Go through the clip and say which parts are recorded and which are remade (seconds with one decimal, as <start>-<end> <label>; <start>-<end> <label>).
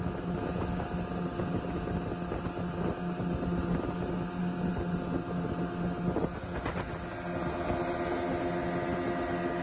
0.0-9.6 recorded